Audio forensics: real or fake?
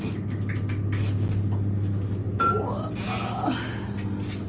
real